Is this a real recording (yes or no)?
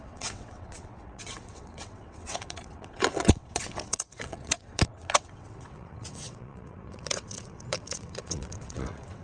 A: no